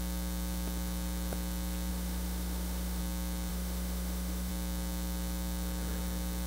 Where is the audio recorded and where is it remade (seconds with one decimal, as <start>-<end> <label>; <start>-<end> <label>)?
0.0-1.9 recorded; 1.9-3.0 remade; 3.0-3.5 recorded; 3.5-4.5 remade; 4.5-6.5 recorded